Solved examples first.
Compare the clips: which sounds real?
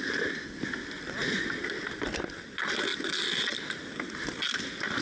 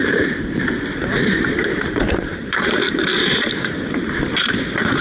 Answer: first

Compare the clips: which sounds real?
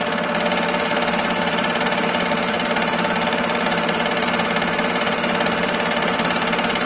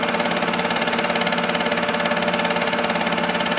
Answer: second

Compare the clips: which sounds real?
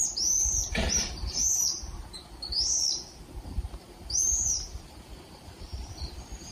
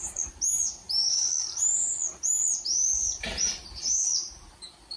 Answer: second